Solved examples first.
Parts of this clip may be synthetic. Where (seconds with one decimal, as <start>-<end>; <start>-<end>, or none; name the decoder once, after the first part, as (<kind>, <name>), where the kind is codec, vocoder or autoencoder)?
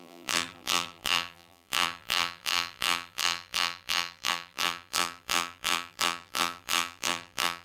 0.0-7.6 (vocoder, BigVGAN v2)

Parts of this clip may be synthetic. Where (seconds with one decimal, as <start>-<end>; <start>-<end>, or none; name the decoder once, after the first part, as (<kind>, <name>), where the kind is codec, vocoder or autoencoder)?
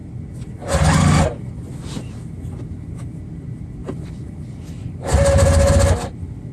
3.8-5.7 (vocoder, BigVGAN v2)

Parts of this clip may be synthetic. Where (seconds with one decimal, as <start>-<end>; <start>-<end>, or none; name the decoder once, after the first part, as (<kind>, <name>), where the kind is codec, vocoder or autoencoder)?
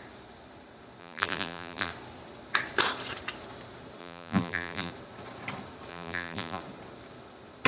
1.0-1.9 (vocoder, BigVGAN v2); 4.0-4.9; 5.9-6.6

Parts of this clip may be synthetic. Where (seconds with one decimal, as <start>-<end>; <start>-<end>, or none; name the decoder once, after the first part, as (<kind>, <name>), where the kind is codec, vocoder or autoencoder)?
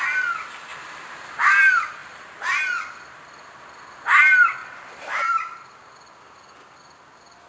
0.7-1.4 (vocoder, BigVGAN v2); 2.0-2.6; 4.6-5.9